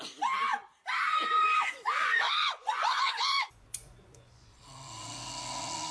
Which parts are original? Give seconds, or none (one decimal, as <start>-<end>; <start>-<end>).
0.0-1.1; 4.6-5.9